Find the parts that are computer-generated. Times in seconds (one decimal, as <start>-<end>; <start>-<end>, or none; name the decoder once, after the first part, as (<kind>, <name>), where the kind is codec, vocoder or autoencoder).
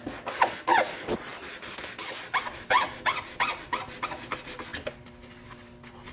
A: none